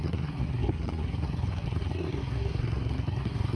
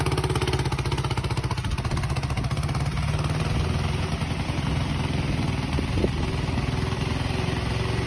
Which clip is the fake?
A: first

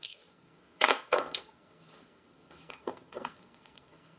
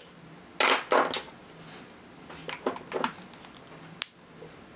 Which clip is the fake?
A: first